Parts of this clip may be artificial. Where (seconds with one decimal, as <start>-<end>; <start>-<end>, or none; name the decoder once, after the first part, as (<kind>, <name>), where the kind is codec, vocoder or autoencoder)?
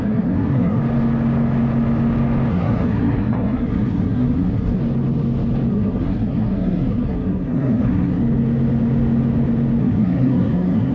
0.0-0.8 (codec, SNAC); 2.5-4.8; 5.7-8.2; 9.8-10.9